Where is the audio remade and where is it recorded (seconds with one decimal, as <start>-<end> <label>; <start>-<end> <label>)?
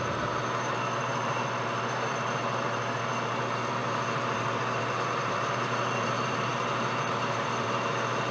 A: 0.0-8.3 remade